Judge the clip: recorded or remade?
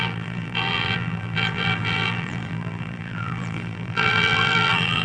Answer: remade